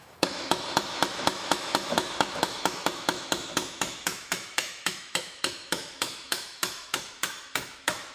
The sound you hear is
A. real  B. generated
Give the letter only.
B